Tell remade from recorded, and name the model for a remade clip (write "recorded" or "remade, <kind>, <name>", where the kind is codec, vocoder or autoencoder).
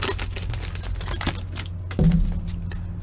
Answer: recorded